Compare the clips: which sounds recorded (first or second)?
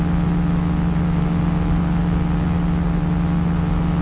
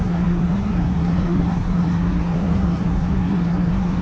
first